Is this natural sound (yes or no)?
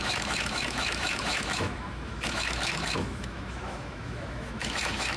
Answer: no